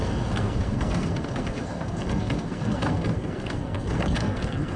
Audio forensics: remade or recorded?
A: remade